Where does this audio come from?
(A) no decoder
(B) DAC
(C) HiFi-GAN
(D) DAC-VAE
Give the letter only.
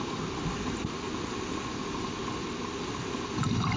A